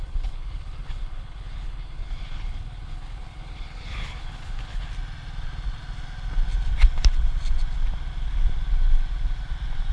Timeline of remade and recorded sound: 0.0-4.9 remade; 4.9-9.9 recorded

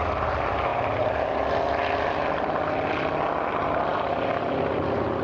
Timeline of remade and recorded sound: 0.0-5.2 recorded

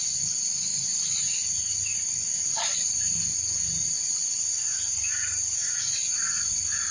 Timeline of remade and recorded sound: 0.0-6.9 recorded

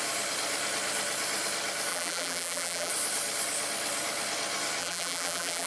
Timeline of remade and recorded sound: 0.0-1.9 recorded; 1.9-2.9 remade; 2.9-4.8 recorded; 4.8-5.7 remade